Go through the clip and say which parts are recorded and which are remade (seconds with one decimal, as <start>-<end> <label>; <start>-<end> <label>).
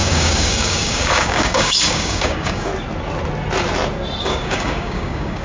0.0-2.7 remade; 2.7-4.2 recorded; 4.2-5.4 remade